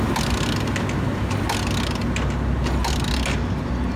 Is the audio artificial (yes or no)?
no